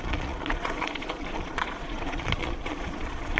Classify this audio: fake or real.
fake